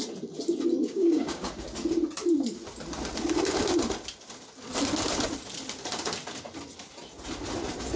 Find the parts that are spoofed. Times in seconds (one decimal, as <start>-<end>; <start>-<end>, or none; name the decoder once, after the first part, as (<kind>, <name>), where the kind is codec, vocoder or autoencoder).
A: 0.8-1.5 (codec, DAC)